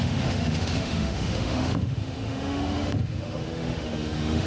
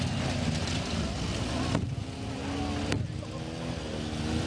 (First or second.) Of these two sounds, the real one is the second